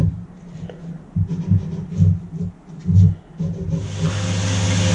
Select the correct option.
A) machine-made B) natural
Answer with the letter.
B